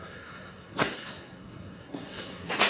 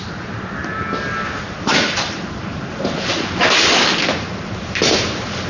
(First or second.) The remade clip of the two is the first